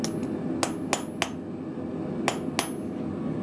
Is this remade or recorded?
recorded